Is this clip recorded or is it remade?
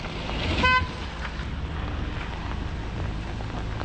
recorded